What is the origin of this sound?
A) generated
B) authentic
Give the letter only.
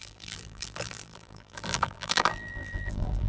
A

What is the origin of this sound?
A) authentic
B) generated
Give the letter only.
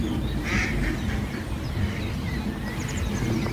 A